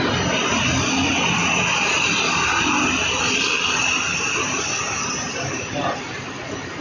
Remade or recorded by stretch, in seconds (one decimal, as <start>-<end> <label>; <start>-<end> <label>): 0.0-6.8 recorded